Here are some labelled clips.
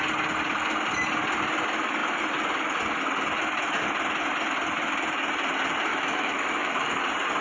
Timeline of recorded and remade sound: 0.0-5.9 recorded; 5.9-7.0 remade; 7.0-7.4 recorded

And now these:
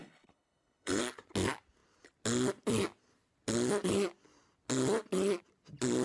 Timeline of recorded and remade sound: 0.0-1.0 remade; 1.0-6.0 recorded

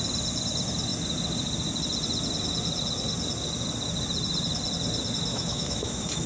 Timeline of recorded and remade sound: 0.0-5.3 recorded; 5.3-6.3 remade

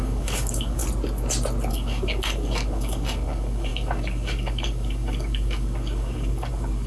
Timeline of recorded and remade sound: 0.0-0.8 remade; 0.8-1.7 recorded; 1.7-6.9 remade

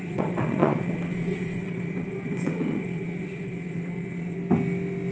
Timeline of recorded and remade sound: 0.0-4.4 remade; 4.4-5.1 recorded